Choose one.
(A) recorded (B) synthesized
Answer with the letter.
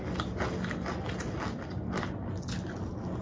A